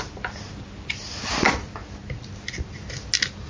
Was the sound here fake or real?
real